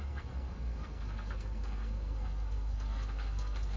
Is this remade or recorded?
remade